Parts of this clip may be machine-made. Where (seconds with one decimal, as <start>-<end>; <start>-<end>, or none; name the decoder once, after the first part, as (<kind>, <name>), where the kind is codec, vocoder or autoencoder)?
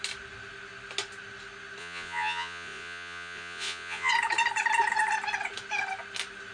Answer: 1.8-4.1 (vocoder, Vocos)